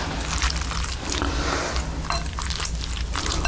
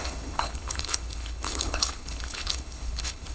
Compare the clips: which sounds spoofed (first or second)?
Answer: second